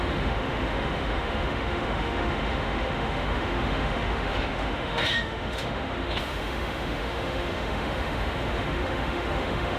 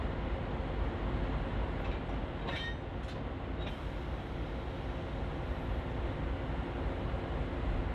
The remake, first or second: first